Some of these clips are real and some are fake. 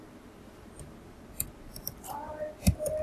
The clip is real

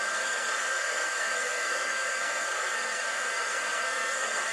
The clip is fake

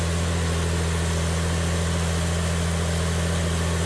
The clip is real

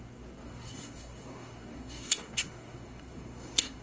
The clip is fake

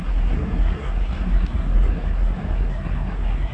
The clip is fake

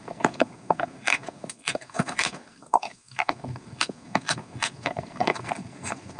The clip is fake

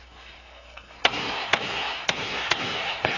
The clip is fake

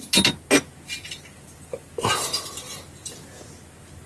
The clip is real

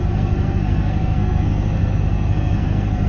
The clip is fake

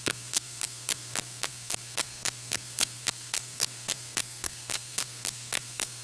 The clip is fake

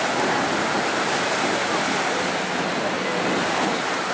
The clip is real